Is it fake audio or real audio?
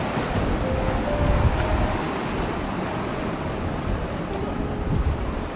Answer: real